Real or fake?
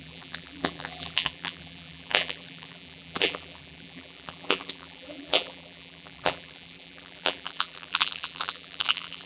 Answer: fake